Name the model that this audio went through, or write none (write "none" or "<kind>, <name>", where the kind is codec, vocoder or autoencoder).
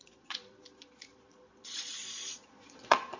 vocoder, Vocos